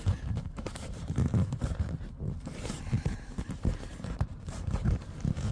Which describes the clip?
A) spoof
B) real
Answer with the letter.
A